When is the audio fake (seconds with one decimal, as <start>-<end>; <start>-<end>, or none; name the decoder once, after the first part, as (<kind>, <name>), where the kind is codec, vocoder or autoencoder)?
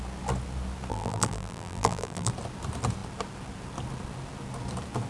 0.9-2.3 (vocoder, BigVGAN v2)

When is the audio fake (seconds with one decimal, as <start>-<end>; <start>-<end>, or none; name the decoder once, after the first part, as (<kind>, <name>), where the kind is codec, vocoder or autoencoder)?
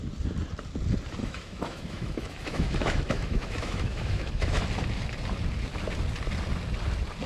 1.2-4.6 (autoencoder, DAC-VAE)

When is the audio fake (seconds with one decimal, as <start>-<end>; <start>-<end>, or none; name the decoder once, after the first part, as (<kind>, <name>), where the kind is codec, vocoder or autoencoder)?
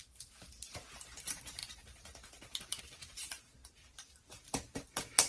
0.0-5.3 (vocoder, BigVGAN v2)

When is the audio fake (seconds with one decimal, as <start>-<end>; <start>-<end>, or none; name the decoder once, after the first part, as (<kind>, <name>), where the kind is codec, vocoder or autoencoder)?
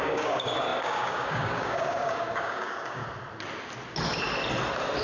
0.0-3.0 (codec, DAC)